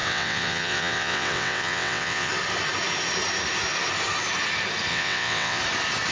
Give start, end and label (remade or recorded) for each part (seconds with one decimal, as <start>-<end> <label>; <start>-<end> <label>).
0.0-2.3 remade; 2.3-4.9 recorded; 4.9-5.6 remade; 5.6-6.1 recorded